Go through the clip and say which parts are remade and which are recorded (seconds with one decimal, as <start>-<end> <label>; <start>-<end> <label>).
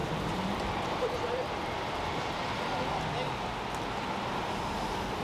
0.0-3.1 remade; 3.1-5.2 recorded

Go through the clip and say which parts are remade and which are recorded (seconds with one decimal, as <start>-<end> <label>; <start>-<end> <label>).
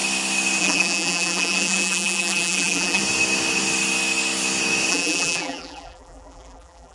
0.0-0.6 recorded; 0.6-3.0 remade; 3.0-4.9 recorded; 4.9-6.9 remade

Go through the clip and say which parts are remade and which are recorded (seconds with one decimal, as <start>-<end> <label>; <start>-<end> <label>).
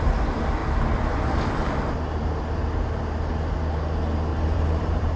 0.0-4.3 recorded; 4.3-5.2 remade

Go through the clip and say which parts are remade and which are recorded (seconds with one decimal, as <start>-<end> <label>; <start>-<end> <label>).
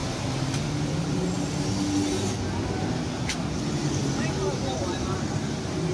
0.0-3.5 recorded; 3.5-4.0 remade; 4.0-4.8 recorded; 4.8-5.9 remade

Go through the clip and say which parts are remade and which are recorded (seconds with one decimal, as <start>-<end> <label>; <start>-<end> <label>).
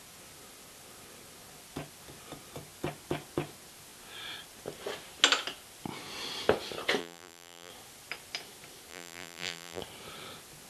0.0-7.0 recorded; 7.0-7.7 remade; 7.7-8.9 recorded; 8.9-9.8 remade; 9.8-10.7 recorded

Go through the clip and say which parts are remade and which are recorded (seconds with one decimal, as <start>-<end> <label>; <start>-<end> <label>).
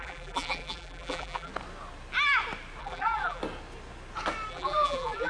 0.0-1.5 remade; 1.5-2.8 recorded; 2.8-3.4 remade; 3.4-4.5 recorded; 4.5-5.3 remade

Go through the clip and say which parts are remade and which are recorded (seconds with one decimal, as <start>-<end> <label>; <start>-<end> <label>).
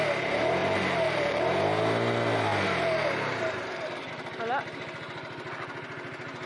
0.0-0.6 recorded; 0.6-1.4 remade; 1.4-2.5 recorded; 2.5-4.1 remade; 4.1-6.5 recorded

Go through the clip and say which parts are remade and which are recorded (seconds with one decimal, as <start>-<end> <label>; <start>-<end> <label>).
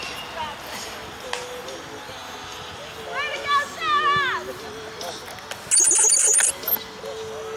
0.0-7.6 recorded